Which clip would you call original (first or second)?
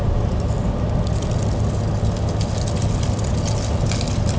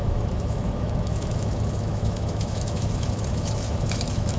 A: first